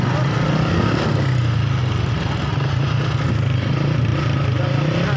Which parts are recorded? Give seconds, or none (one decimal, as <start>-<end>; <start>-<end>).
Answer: 0.0-5.2